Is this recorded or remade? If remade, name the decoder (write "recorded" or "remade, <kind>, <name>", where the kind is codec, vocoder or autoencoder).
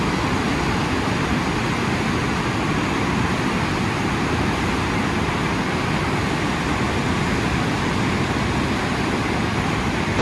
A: recorded